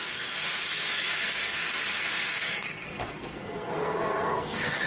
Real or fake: fake